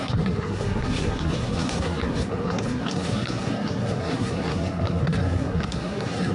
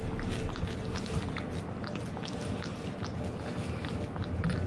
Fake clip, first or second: first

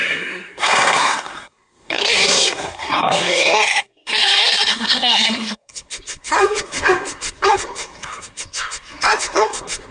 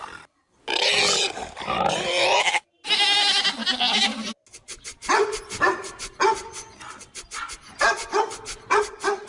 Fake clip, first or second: first